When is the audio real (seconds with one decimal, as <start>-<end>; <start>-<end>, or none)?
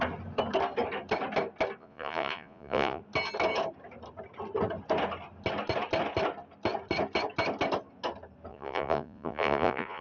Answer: 0.0-1.8; 3.0-8.5